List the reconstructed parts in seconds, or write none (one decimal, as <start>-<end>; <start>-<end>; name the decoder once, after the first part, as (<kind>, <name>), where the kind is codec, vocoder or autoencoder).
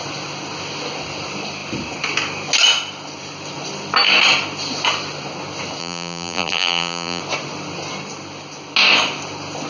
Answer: 5.8-7.2 (vocoder, BigVGAN v2)